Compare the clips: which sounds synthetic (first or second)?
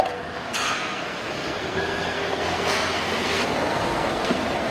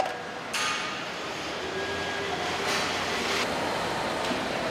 first